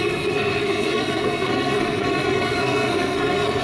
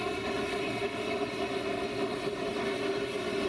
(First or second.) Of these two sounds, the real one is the second